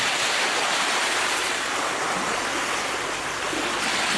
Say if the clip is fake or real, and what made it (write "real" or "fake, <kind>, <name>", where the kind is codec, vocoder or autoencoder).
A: real